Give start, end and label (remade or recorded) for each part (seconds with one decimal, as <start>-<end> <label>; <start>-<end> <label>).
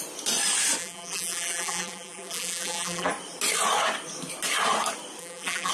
0.0-0.8 recorded; 0.8-3.1 remade; 3.1-5.2 recorded; 5.2-5.7 remade